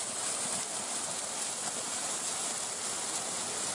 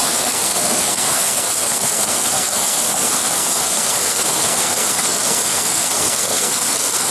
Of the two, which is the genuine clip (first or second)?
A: first